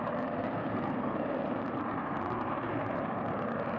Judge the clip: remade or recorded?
remade